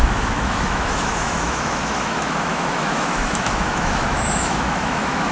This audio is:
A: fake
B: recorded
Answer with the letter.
A